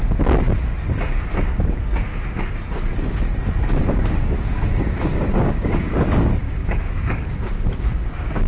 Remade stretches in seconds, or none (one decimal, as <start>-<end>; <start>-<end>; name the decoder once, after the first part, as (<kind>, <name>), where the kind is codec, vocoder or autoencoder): 0.0-0.7 (codec, DAC); 1.3-2.1; 3.8-8.5